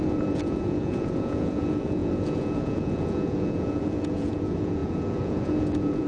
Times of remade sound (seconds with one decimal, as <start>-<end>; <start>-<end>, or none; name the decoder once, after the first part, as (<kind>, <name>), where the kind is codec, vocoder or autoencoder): 0.0-6.1 (vocoder, Vocos)